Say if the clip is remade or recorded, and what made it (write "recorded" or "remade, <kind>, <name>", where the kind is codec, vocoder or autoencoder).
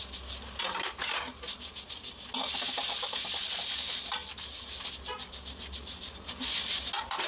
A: recorded